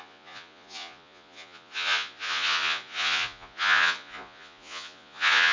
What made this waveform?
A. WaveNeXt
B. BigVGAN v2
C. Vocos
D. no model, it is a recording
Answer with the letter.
C